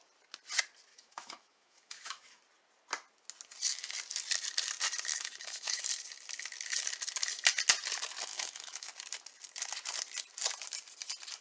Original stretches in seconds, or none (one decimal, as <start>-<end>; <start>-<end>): 0.0-0.9; 2.4-5.1; 5.8-8.3; 8.9-11.4